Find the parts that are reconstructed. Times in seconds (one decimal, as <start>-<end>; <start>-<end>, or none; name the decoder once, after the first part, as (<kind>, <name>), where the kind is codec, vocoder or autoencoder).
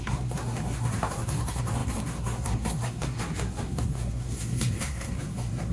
0.0-5.7 (codec, SNAC)